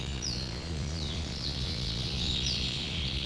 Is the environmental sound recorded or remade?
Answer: remade